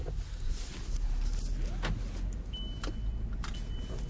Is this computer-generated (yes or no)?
no